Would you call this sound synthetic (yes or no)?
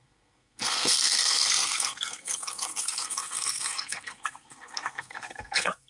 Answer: yes